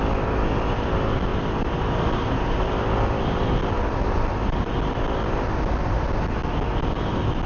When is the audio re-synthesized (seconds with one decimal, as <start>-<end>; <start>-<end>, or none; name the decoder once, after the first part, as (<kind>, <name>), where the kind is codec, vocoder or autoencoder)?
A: none